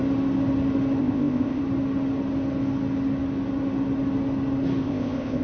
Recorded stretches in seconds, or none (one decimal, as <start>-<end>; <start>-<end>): 0.0-1.0; 1.6-4.8